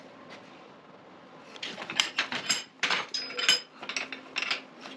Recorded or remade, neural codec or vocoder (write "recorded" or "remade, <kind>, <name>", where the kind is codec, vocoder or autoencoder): recorded